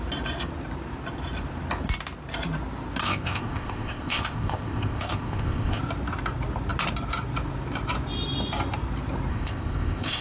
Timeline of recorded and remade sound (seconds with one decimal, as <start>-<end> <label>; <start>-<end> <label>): 0.0-3.0 recorded; 3.0-5.8 remade; 5.8-9.3 recorded; 9.3-10.2 remade